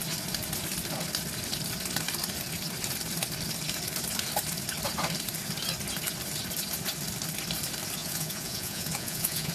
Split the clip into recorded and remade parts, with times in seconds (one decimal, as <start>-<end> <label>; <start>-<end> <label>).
0.0-8.0 recorded; 8.0-9.5 remade